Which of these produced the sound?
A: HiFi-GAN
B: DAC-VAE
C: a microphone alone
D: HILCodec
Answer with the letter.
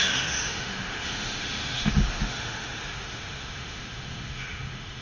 B